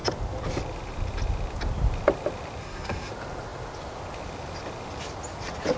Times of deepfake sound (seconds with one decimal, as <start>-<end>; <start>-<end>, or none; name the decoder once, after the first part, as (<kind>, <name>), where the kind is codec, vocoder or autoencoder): 2.6-3.1 (codec, SNAC)